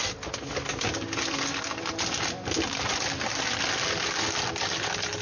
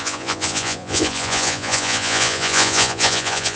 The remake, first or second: second